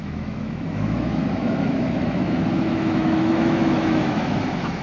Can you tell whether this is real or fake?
fake